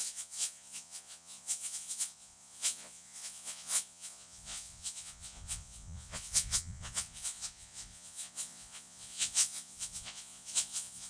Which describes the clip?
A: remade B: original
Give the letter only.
A